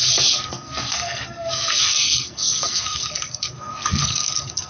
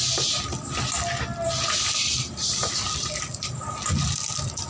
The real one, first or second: second